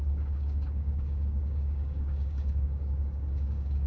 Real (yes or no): no